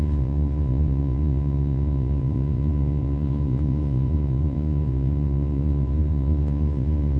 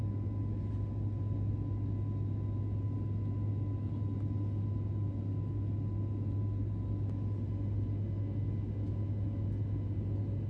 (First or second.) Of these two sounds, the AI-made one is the first